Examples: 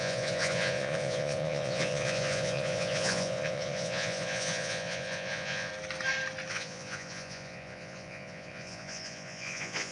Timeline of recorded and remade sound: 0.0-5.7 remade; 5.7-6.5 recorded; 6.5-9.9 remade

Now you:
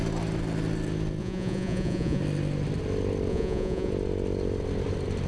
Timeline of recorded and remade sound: 0.0-1.2 recorded; 1.2-2.2 remade; 2.2-3.3 recorded; 3.3-3.9 remade; 3.9-5.3 recorded

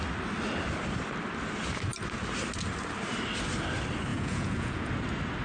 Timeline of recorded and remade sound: 0.0-4.1 recorded; 4.1-4.9 remade; 4.9-5.4 recorded

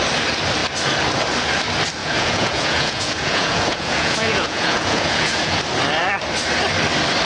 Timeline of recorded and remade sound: 0.0-2.0 recorded; 2.0-5.6 remade; 5.6-7.2 recorded

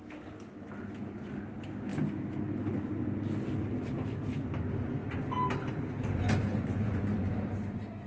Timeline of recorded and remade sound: 0.0-6.5 recorded; 6.5-7.3 remade; 7.3-8.1 recorded

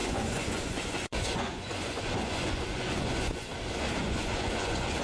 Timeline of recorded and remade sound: 0.0-3.5 remade; 3.5-4.0 recorded; 4.0-5.0 remade

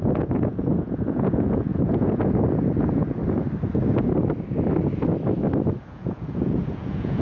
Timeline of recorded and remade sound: 0.0-3.2 remade; 3.2-5.8 recorded; 5.8-7.2 remade

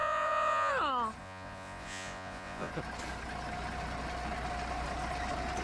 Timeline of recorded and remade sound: 0.0-0.7 remade; 0.7-1.2 recorded; 1.2-2.7 remade; 2.7-5.6 recorded